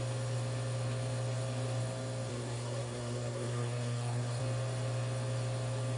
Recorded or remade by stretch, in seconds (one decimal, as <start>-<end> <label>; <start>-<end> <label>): 0.0-2.3 recorded; 2.3-4.4 remade; 4.4-6.0 recorded